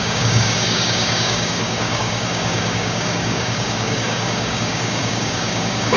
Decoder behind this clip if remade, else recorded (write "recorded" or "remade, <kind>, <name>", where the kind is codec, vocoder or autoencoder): remade, codec, DAC